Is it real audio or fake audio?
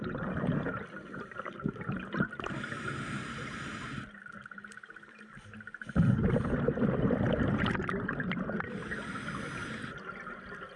real